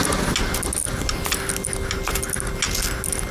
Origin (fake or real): real